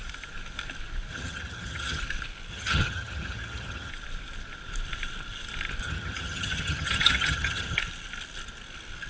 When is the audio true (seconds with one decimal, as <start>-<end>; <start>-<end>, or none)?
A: 0.0-1.1; 2.0-2.5; 3.9-5.8; 7.8-9.1